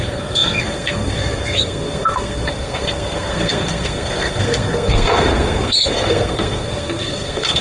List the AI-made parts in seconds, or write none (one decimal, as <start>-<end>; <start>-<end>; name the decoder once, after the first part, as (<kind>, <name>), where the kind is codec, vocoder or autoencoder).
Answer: 0.0-7.6 (codec, SNAC)